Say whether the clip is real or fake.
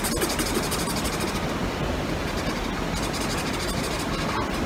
real